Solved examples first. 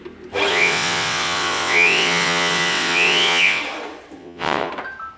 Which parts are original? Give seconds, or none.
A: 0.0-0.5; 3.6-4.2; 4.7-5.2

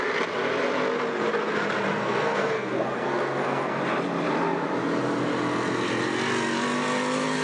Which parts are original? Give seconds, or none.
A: 0.0-1.9; 3.8-7.4